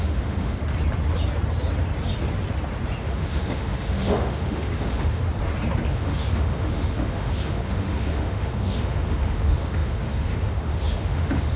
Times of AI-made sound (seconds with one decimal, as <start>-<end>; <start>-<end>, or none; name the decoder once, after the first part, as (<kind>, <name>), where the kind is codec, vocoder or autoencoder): 0.0-0.6 (autoencoder, DAC-VAE); 3.0-5.2; 5.9-11.6